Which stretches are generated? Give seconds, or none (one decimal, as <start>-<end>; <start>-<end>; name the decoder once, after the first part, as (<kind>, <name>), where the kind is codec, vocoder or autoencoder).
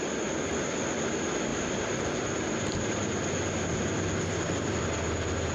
none